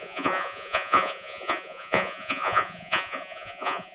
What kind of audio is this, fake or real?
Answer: fake